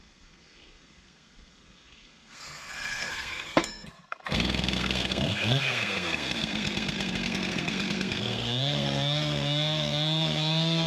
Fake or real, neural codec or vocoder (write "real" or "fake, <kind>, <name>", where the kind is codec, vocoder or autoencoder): fake, codec, SNAC